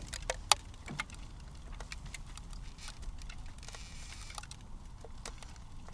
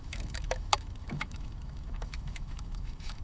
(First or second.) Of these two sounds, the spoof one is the second